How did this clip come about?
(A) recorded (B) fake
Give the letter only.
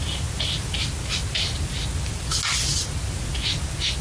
A